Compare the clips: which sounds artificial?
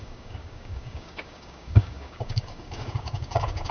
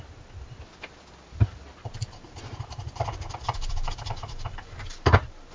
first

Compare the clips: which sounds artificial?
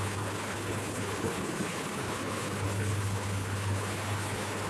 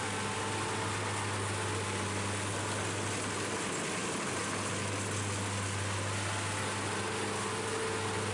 first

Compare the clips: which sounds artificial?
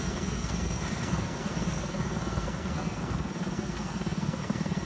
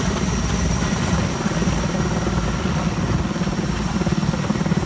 first